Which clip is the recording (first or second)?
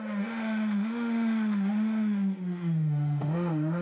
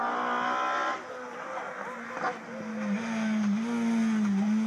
second